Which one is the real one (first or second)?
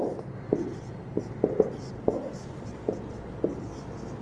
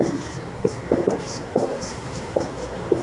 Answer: first